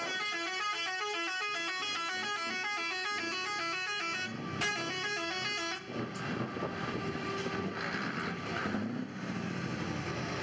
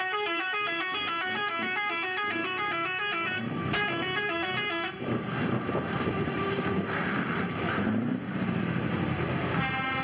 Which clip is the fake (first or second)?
second